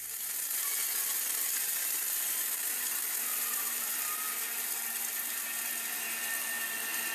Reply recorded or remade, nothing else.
recorded